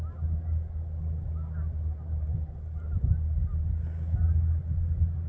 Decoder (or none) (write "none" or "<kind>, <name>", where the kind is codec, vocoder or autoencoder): none